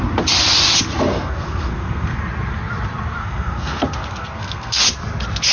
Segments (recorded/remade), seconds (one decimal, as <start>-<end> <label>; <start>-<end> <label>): 0.0-1.1 recorded; 1.1-2.2 remade; 2.2-3.2 recorded; 3.2-4.8 remade; 4.8-5.5 recorded